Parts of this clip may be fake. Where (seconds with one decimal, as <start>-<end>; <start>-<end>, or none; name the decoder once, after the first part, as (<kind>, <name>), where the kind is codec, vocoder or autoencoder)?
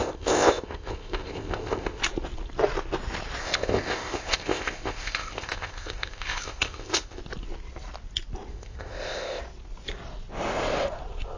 0.0-2.0 (codec, ZipCodec); 3.4-7.2; 8.5-9.4